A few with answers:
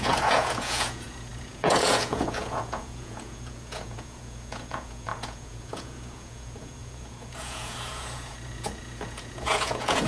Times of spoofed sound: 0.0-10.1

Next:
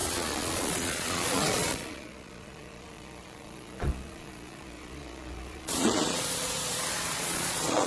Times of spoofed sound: 0.0-7.9

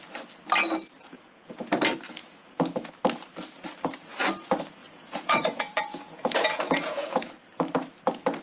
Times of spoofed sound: 1.1-1.7; 2.2-2.9; 4.8-7.3

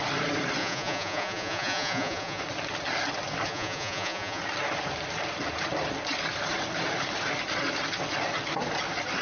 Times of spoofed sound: 0.6-2.4; 3.5-4.4

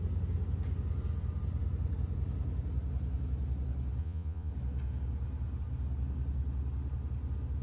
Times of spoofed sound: 4.0-4.5

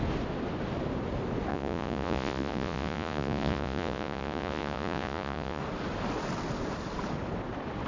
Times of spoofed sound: 1.5-5.6

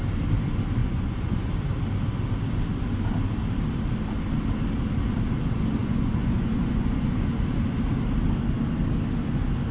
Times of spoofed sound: 0.8-1.5; 5.8-7.4